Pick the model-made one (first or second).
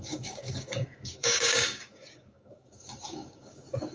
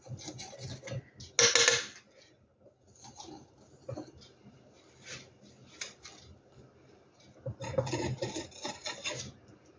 first